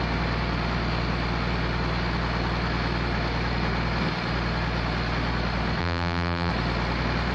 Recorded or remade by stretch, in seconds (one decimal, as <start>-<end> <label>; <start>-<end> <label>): 0.0-5.8 recorded; 5.8-6.5 remade; 6.5-7.3 recorded